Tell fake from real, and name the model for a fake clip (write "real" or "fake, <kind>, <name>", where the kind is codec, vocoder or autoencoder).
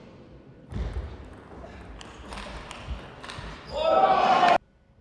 real